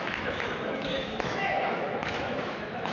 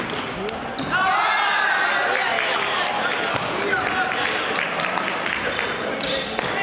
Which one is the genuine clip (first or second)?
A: second